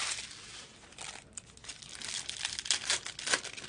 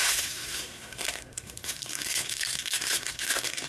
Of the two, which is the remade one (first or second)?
second